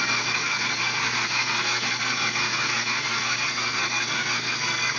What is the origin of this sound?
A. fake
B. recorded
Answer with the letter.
A